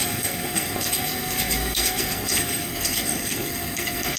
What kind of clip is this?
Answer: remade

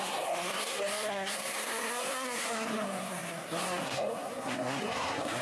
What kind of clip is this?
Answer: remade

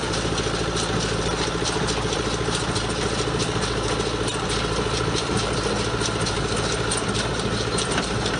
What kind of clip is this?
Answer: recorded